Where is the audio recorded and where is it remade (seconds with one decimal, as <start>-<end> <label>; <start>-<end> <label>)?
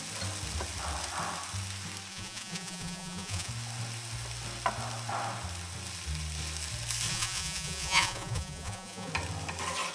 0.0-2.1 recorded; 2.1-3.5 remade; 3.5-7.1 recorded; 7.1-9.1 remade; 9.1-9.9 recorded